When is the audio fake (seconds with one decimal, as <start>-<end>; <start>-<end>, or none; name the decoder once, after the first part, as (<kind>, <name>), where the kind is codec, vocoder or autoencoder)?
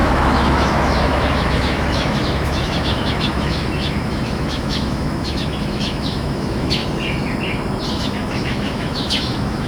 0.0-6.8 (autoencoder, DAC-VAE); 7.9-9.7